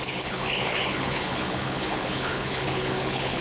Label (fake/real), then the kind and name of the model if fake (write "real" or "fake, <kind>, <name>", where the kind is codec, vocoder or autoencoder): fake, codec, HILCodec